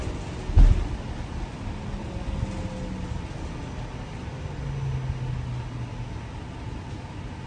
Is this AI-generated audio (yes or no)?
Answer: no